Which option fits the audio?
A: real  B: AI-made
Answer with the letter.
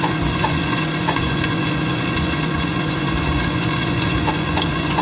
B